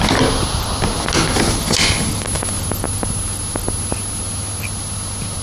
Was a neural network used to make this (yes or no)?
no